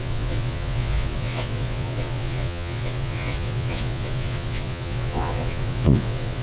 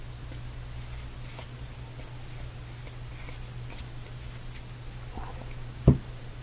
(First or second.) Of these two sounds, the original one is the second